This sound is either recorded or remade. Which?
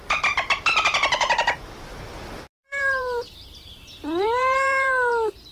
remade